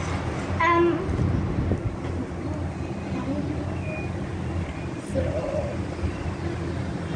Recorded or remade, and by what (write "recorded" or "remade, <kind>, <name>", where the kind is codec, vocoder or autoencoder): recorded